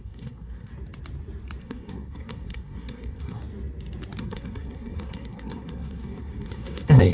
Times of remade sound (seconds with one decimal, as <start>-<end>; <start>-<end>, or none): 0.0-0.7; 1.6-3.4; 4.2-7.1